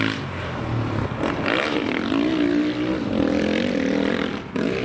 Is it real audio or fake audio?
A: real